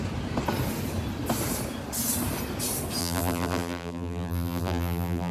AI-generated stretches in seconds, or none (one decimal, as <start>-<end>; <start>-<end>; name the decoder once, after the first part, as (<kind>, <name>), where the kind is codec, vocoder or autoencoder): 3.0-5.3 (vocoder, BigVGAN v2)